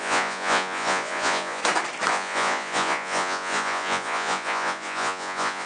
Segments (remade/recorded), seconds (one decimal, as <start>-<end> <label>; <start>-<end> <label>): 0.0-1.6 remade; 1.6-2.1 recorded; 2.1-5.7 remade